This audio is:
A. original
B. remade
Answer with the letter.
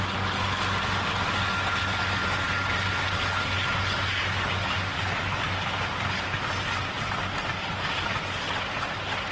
A